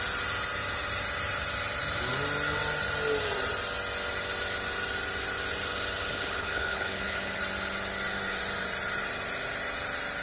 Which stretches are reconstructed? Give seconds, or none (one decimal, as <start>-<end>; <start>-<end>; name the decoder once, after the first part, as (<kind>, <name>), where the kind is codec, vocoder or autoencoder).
6.1-7.4 (codec, HILCodec)